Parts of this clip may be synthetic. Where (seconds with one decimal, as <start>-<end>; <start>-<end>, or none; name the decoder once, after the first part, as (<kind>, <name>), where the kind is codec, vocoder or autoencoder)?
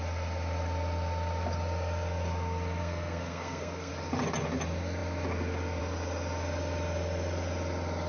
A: 2.8-3.9 (codec, SNAC)